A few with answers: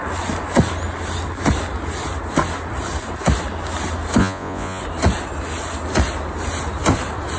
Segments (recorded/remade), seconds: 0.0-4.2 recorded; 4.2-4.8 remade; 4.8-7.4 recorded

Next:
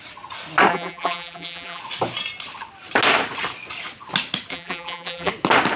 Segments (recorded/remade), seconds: 0.0-0.7 recorded; 0.7-1.8 remade; 1.8-4.5 recorded; 4.5-5.3 remade; 5.3-5.8 recorded

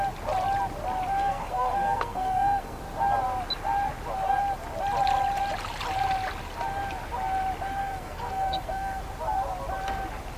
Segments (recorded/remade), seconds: 0.0-1.2 recorded; 1.2-2.8 remade; 2.8-7.8 recorded; 7.8-9.0 remade; 9.0-10.4 recorded